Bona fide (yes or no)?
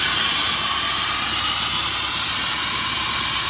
yes